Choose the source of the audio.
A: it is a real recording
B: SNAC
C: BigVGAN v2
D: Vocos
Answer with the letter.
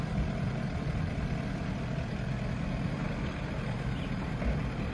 C